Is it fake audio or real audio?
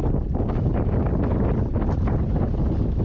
real